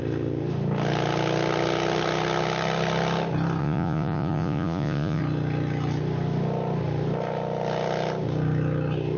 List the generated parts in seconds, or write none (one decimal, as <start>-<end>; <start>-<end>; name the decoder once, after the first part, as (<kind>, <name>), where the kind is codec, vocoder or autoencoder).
3.6-5.2 (vocoder, Vocos)